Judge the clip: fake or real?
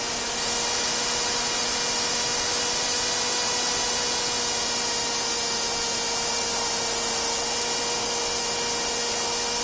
real